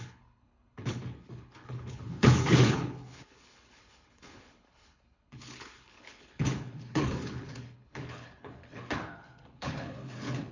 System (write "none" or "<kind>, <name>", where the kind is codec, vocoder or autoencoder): codec, HILCodec